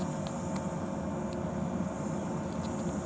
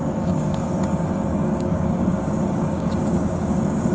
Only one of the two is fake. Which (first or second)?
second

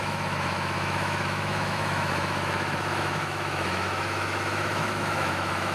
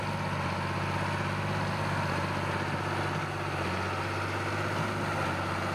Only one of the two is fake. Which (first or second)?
first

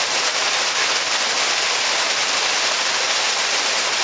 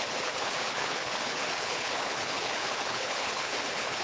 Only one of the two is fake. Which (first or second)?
second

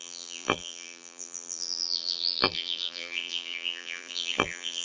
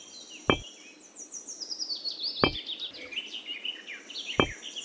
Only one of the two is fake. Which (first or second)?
first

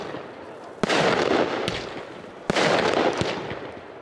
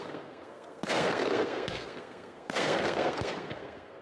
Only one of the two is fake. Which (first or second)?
second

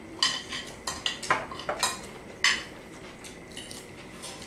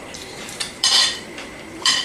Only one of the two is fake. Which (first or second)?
second